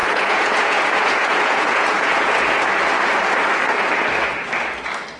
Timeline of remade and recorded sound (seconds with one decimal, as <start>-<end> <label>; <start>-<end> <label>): 0.0-2.6 remade; 2.6-5.2 recorded